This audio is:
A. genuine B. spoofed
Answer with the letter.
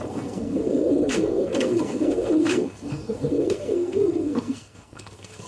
B